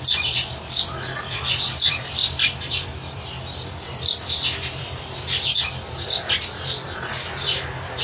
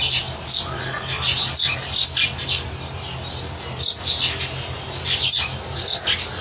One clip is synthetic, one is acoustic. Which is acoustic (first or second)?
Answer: second